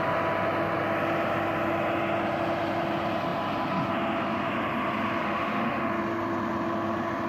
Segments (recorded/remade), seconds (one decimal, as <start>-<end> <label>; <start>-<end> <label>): 0.0-5.2 recorded; 5.2-5.9 remade; 5.9-7.3 recorded